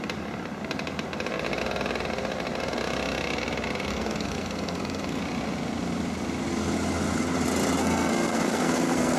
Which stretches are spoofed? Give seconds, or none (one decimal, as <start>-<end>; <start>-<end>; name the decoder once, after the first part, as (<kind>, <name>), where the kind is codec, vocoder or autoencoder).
3.9-5.2 (codec, SNAC); 7.8-9.2